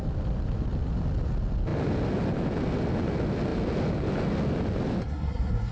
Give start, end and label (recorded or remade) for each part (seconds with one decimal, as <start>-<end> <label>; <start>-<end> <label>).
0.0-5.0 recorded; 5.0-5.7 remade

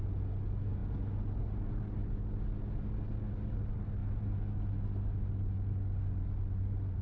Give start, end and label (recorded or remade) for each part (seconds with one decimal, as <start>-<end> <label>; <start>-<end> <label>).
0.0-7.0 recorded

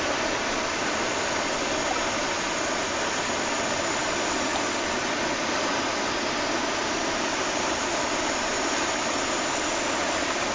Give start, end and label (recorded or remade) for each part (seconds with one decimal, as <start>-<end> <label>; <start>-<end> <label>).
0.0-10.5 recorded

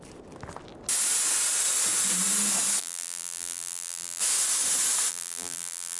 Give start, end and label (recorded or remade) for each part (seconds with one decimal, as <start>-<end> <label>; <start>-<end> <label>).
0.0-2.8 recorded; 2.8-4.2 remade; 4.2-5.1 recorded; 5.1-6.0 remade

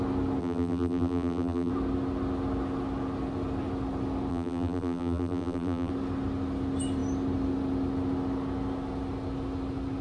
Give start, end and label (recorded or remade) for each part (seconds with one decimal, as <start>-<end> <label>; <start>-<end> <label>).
0.0-0.4 recorded; 0.4-1.7 remade; 1.7-4.3 recorded; 4.3-5.9 remade; 5.9-10.0 recorded